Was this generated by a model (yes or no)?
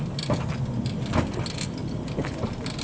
no